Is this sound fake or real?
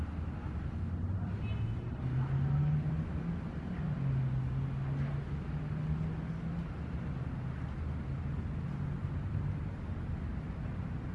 real